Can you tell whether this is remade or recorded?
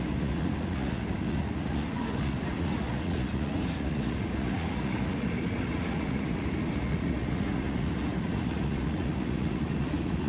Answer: remade